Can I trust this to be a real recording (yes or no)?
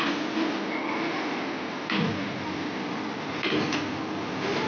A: yes